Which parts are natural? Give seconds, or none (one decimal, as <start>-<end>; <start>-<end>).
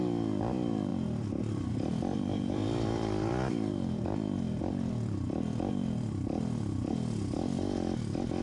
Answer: 0.0-0.9; 1.4-2.1; 6.9-8.4